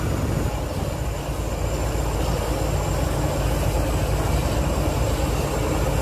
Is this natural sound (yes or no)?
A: yes